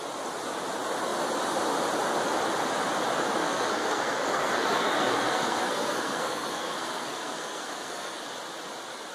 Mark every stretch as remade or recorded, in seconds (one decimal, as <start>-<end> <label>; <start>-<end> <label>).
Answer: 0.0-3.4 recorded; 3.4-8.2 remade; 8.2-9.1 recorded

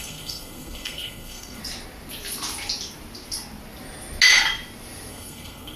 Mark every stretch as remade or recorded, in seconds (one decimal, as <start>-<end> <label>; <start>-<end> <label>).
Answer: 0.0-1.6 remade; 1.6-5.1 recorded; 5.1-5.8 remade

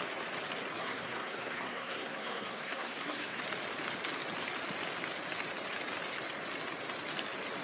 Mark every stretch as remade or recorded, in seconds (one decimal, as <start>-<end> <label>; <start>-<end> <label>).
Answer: 0.0-0.8 recorded; 0.8-3.4 remade; 3.4-7.6 recorded

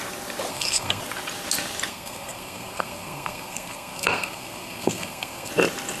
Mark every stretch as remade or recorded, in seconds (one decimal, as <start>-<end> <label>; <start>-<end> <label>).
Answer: 0.0-0.5 recorded; 0.5-1.0 remade; 1.0-1.9 recorded; 1.9-5.5 remade; 5.5-6.0 recorded

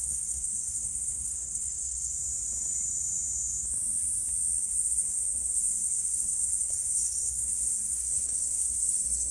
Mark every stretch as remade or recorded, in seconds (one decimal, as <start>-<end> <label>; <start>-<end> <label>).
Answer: 0.0-2.1 remade; 2.1-4.6 recorded; 4.6-9.3 remade

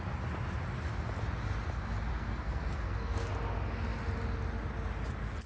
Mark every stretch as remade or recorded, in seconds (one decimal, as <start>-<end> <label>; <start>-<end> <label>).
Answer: 0.0-2.1 recorded; 2.1-3.3 remade; 3.3-5.5 recorded

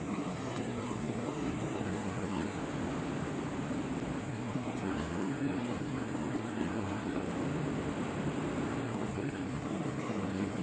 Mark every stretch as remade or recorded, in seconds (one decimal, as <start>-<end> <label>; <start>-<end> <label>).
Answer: 0.0-2.6 remade; 2.6-4.2 recorded; 4.2-7.3 remade; 7.3-8.8 recorded; 8.8-10.6 remade